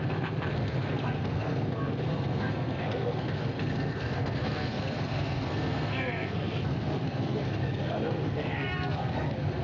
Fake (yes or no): yes